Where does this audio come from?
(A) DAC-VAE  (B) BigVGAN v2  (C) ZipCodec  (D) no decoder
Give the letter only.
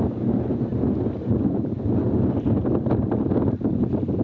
D